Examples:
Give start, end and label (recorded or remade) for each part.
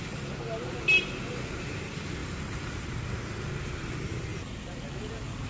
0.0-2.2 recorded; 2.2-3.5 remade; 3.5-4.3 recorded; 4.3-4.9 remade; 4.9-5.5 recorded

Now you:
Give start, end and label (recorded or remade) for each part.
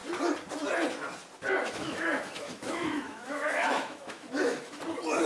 0.0-1.6 recorded; 1.6-4.8 remade; 4.8-5.3 recorded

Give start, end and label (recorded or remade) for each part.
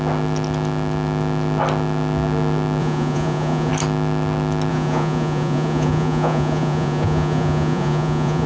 0.0-2.8 recorded; 2.8-3.7 remade; 3.7-4.7 recorded; 4.7-8.5 remade